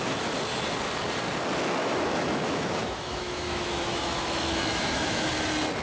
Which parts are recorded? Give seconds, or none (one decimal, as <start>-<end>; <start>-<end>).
0.0-1.8; 5.3-5.8